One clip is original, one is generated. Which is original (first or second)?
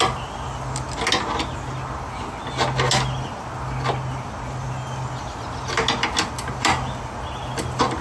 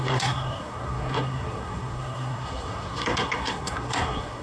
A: first